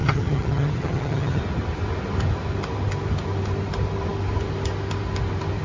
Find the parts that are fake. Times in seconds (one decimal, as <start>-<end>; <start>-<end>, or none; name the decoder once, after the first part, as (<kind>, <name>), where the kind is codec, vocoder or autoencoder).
0.0-1.4 (vocoder, HiFi-GAN)